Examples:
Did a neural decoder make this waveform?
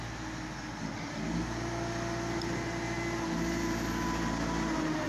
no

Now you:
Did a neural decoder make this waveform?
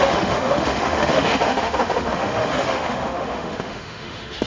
yes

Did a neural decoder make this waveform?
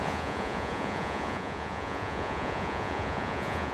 yes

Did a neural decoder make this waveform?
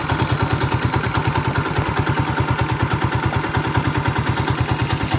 no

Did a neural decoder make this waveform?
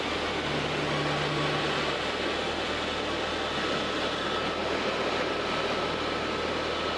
no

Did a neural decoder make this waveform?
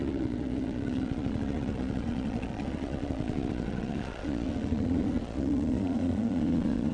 yes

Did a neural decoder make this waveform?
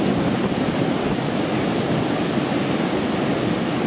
no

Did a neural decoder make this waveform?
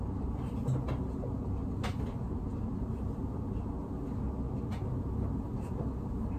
no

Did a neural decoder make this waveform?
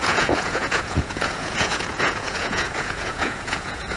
yes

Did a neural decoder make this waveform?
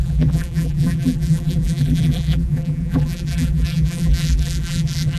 yes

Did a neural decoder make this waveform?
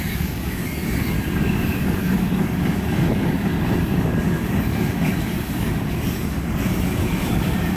yes